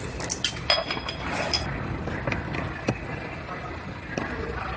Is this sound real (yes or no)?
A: yes